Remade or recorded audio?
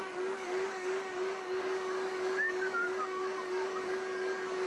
remade